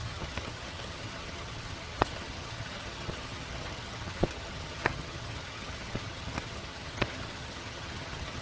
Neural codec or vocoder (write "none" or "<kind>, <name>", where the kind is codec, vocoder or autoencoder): vocoder, HiFi-GAN